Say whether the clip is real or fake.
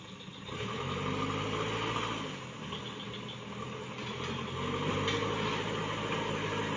real